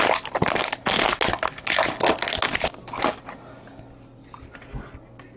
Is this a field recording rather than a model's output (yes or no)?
yes